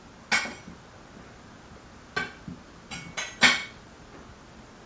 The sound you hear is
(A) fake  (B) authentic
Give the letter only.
B